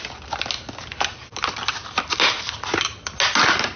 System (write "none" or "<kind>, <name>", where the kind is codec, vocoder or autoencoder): none